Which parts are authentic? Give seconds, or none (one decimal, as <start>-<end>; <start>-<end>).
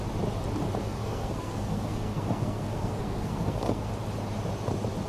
0.0-0.8; 3.9-5.1